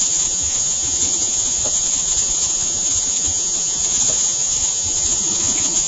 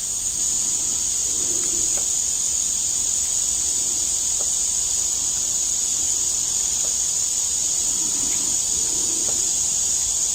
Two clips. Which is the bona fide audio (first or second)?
second